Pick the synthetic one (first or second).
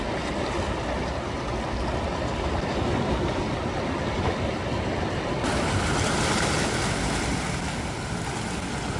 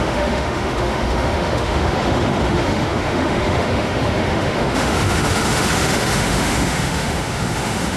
second